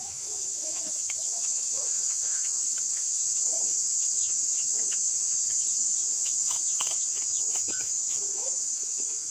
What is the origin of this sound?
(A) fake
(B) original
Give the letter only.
A